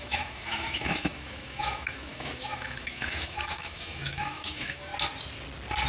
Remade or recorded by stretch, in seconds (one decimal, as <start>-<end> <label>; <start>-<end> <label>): 0.0-4.9 remade; 4.9-5.9 recorded